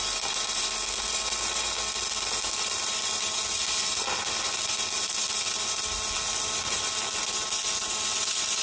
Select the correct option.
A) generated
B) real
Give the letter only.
B